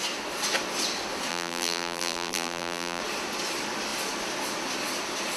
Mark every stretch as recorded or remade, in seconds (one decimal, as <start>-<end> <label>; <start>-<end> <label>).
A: 0.0-1.3 recorded; 1.3-3.0 remade; 3.0-5.4 recorded